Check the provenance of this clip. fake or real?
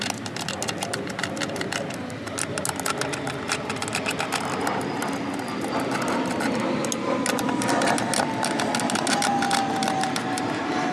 real